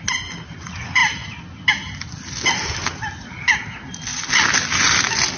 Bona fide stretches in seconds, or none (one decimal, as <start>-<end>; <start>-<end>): 0.0-5.4

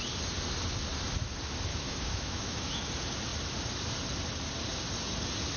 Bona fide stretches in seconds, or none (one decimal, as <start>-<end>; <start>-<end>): 0.0-1.7; 2.9-5.6

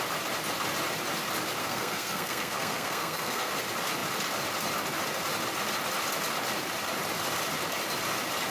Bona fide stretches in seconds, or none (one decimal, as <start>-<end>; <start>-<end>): 0.0-1.6; 3.5-8.5

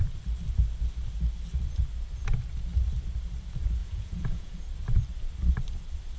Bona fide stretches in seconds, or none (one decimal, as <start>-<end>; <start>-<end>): 0.0-3.8; 4.6-6.2

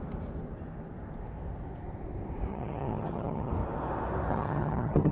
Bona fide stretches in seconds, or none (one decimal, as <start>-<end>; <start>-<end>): 0.0-2.5; 3.5-4.3

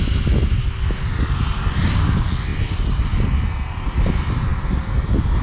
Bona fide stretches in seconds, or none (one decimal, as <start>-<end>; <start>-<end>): 0.0-2.5; 4.1-5.4